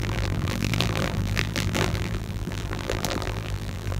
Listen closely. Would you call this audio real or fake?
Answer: fake